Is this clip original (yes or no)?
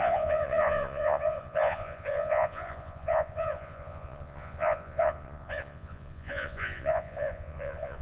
no